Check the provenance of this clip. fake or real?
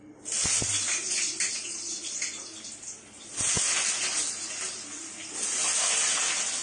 real